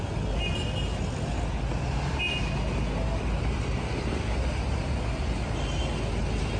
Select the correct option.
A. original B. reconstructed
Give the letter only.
A